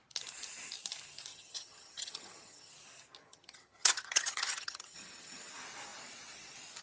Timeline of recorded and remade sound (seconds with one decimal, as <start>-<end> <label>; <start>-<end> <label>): 0.0-1.3 recorded; 1.3-2.7 remade; 2.7-3.2 recorded; 3.2-5.5 remade; 5.5-6.8 recorded